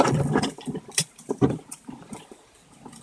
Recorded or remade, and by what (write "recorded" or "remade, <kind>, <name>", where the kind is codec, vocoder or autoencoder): remade, vocoder, BigVGAN v2